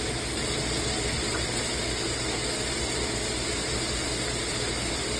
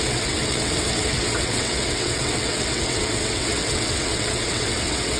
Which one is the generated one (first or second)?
second